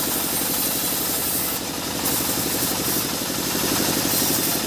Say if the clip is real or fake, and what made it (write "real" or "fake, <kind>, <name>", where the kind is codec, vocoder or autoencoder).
real